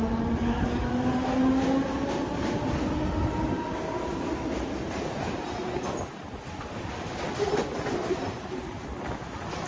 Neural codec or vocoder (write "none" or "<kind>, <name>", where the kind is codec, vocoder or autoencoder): none